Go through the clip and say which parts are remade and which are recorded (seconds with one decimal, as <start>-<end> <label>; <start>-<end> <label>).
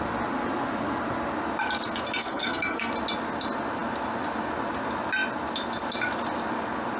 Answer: 0.0-2.2 recorded; 2.2-2.9 remade; 2.9-7.0 recorded